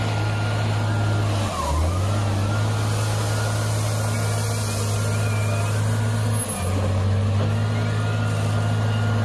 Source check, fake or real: real